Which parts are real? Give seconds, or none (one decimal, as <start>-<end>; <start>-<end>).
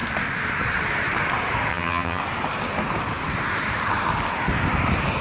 0.0-1.7; 2.2-5.2